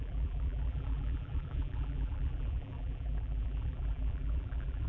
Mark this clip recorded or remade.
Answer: remade